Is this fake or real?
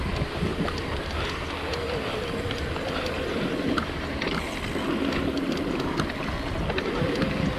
real